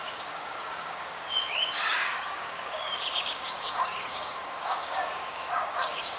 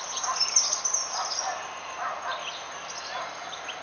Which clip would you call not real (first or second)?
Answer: first